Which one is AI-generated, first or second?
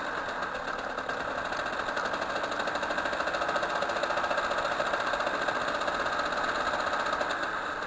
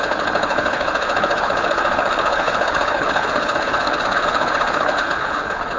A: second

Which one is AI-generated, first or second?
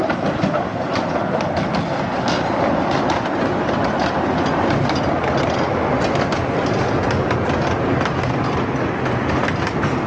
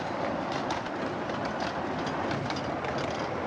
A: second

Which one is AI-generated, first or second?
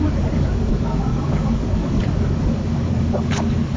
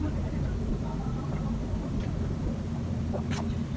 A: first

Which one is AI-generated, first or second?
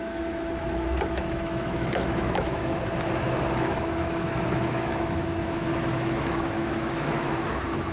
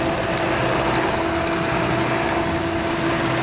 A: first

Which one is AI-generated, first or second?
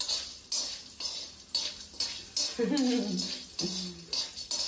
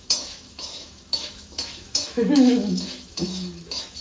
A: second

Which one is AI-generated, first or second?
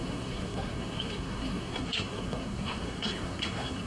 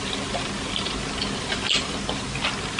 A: first